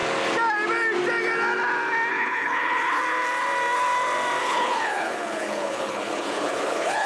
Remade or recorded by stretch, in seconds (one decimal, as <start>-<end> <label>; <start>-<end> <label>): 0.0-2.1 recorded; 2.1-3.0 remade; 3.0-4.4 recorded; 4.4-7.1 remade